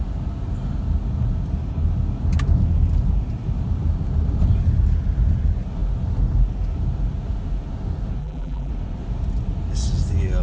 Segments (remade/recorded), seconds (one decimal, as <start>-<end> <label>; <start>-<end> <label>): 0.0-8.2 recorded; 8.2-8.7 remade; 8.7-10.4 recorded